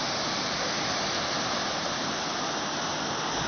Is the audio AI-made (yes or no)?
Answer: no